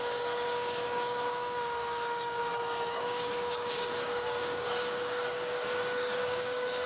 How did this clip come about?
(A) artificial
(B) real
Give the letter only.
A